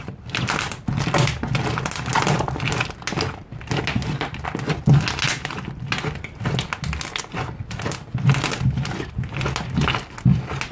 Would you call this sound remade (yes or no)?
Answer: no